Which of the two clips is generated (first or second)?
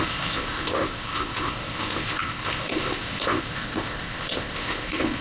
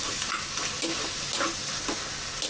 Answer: first